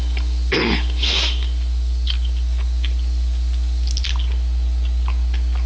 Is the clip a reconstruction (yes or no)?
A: no